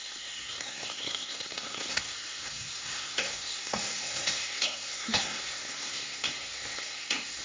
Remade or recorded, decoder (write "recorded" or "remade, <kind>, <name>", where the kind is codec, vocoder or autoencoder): remade, codec, SNAC